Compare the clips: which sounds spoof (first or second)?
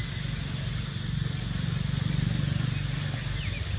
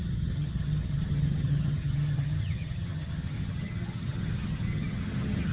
second